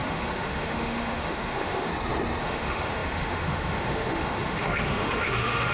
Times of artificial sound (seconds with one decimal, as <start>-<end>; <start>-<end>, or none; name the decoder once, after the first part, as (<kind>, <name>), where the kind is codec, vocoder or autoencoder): 0.0-1.9 (autoencoder, DAC-VAE); 2.4-5.7